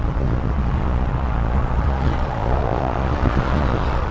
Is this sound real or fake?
fake